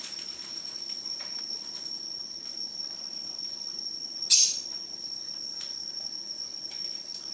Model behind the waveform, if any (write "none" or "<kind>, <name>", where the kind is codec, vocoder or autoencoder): vocoder, Vocos